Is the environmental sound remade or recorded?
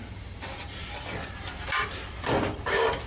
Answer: remade